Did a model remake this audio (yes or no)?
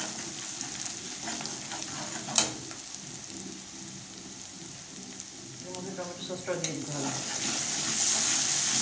no